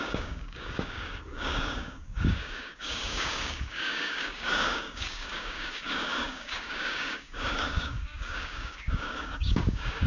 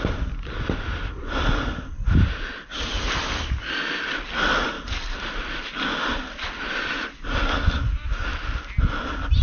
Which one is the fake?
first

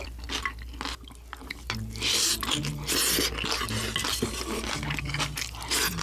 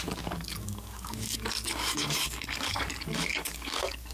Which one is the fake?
second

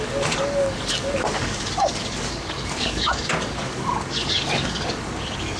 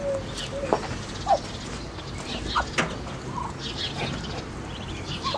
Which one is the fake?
first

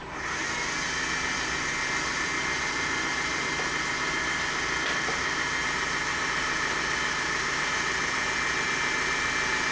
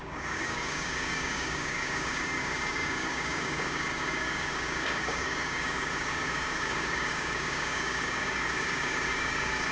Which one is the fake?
second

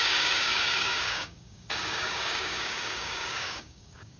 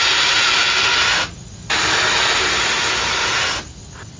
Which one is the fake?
first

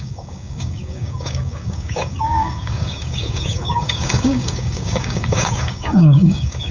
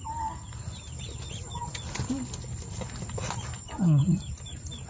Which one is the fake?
first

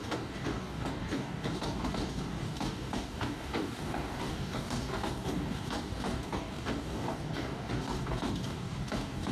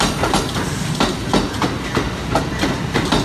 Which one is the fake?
first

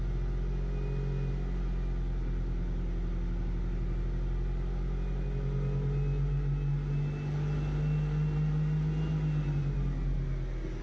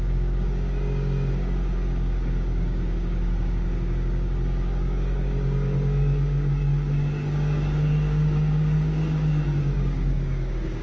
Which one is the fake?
second